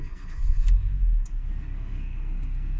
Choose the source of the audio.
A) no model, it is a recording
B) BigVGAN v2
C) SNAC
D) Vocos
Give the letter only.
C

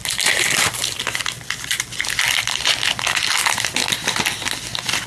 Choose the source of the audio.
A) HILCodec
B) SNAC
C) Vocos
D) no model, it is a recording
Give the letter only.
D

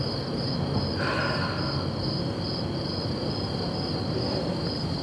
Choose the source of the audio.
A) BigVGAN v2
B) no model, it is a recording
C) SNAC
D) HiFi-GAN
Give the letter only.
B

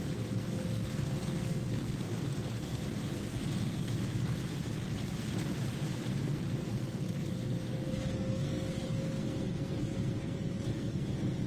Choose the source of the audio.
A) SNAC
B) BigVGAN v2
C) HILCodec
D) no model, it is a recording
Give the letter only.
A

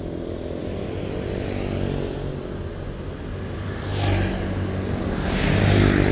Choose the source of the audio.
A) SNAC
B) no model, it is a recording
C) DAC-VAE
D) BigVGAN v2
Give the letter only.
B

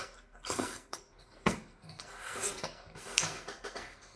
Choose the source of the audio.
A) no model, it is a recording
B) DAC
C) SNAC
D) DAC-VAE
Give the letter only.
C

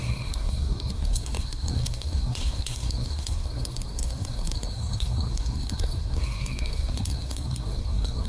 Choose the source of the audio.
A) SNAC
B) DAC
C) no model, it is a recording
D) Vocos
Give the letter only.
A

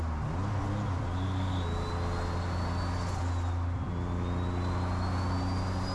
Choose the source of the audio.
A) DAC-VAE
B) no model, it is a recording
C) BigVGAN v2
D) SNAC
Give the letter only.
B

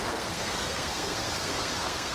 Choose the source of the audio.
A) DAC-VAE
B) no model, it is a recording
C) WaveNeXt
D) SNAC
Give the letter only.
D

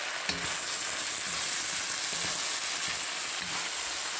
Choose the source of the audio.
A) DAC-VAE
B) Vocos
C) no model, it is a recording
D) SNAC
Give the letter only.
C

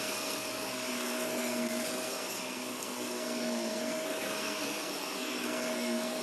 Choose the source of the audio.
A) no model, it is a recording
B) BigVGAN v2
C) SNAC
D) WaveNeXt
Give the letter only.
C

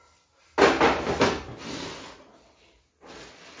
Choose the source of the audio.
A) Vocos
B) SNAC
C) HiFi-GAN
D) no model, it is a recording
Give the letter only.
D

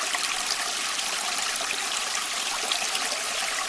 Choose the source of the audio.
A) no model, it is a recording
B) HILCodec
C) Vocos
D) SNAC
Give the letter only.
A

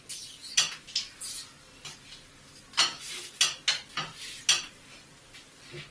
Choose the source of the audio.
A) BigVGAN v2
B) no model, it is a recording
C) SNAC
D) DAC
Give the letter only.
B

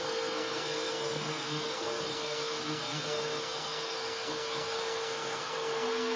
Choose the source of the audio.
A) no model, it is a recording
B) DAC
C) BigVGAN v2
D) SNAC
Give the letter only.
D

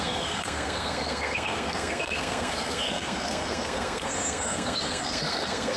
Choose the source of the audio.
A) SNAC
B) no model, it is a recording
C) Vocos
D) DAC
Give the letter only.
A